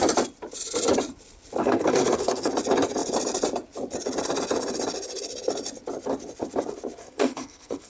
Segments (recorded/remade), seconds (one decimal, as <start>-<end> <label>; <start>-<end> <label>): 0.0-1.6 recorded; 1.6-2.5 remade; 2.5-7.0 recorded; 7.0-7.9 remade